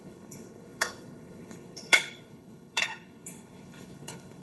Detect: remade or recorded remade